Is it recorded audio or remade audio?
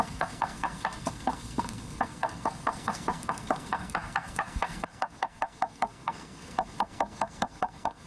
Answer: remade